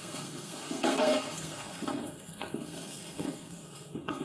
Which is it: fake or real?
fake